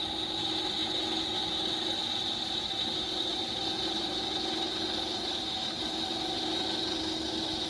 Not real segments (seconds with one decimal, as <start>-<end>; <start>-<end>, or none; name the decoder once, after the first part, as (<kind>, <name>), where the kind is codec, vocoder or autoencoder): 3.3-7.0 (vocoder, BigVGAN v2)